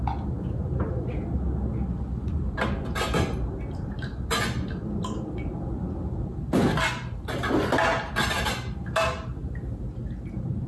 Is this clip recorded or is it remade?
recorded